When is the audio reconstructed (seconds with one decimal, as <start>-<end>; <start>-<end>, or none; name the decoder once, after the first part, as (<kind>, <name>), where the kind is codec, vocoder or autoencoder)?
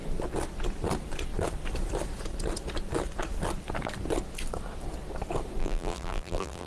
5.6-6.7 (vocoder, BigVGAN v2)